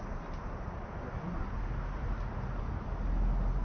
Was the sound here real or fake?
real